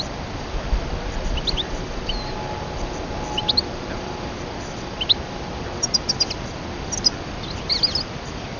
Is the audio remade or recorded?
recorded